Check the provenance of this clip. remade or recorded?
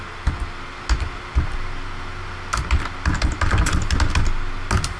recorded